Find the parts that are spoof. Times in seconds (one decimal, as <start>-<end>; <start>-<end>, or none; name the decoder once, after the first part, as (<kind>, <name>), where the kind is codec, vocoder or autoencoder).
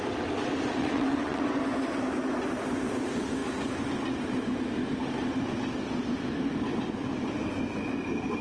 0.8-1.6 (vocoder, WaveNeXt)